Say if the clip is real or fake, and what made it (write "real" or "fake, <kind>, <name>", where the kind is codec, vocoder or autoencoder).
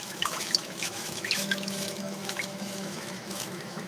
fake, autoencoder, DAC-VAE